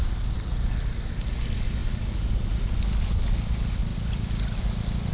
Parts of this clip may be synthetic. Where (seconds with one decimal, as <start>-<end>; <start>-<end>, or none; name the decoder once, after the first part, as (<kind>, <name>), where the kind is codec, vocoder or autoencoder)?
none